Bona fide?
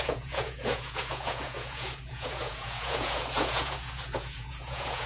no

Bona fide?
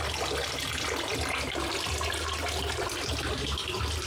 yes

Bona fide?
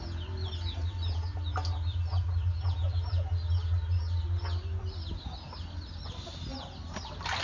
yes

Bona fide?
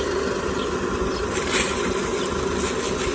yes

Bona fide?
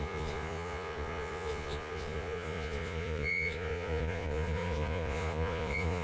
no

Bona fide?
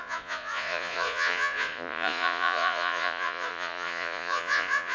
no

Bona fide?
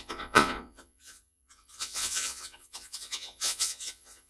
no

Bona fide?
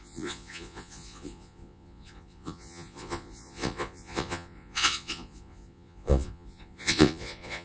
no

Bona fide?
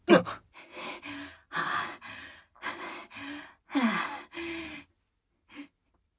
yes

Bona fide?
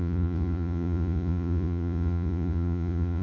no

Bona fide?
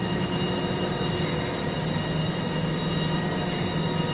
yes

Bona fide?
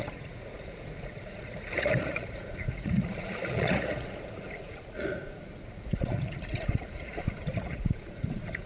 no